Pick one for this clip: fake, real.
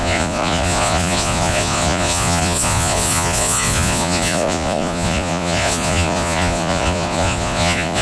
fake